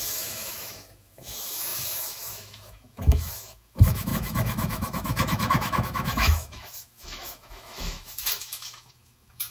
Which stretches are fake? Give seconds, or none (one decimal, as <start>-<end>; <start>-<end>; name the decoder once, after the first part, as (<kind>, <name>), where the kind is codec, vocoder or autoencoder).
0.0-9.5 (autoencoder, DAC-VAE)